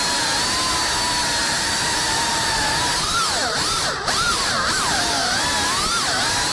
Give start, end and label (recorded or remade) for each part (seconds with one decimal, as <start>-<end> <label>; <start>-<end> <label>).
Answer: 0.0-1.4 recorded; 1.4-2.5 remade; 2.5-3.4 recorded; 3.4-5.3 remade; 5.3-6.5 recorded

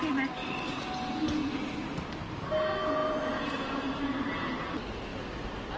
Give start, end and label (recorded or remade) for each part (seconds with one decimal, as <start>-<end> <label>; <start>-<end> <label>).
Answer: 0.0-3.0 recorded; 3.0-3.9 remade; 3.9-5.8 recorded